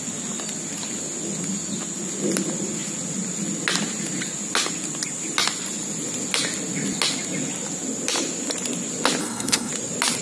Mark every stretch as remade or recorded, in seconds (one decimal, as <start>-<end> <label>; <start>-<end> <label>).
0.0-9.2 recorded; 9.2-9.7 remade; 9.7-10.2 recorded